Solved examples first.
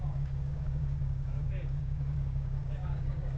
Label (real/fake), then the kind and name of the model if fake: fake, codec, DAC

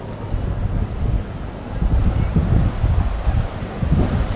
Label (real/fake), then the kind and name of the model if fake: real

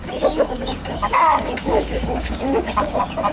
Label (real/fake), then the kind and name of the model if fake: fake, codec, DAC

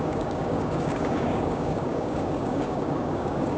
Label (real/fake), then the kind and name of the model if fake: fake, codec, DAC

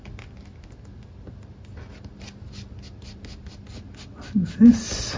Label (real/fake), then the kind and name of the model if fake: real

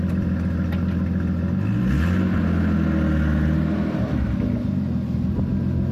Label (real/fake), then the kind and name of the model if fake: real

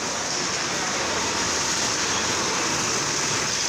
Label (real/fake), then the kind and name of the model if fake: real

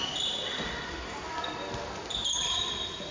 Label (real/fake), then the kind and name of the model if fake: real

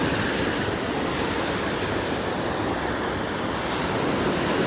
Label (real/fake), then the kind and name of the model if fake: real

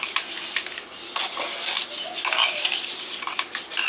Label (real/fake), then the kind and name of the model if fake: real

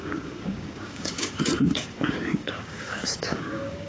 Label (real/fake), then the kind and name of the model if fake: fake, codec, DAC